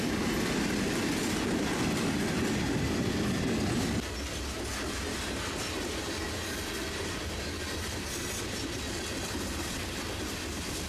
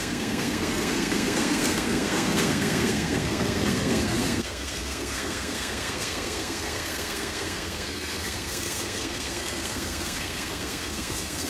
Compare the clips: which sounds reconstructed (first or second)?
second